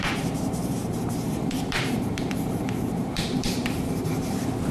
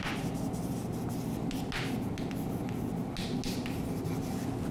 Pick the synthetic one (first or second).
first